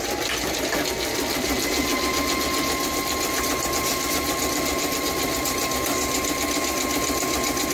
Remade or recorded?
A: recorded